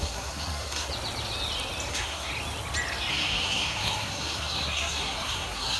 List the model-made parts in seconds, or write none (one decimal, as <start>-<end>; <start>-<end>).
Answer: 0.0-0.9; 1.9-2.3; 3.1-5.8